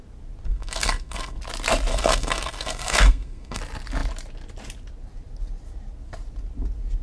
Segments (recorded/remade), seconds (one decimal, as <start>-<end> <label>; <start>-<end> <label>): 0.0-0.5 recorded; 0.5-1.4 remade; 1.4-1.9 recorded; 1.9-3.6 remade; 3.6-7.0 recorded